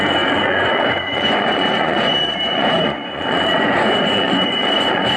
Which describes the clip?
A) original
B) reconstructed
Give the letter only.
B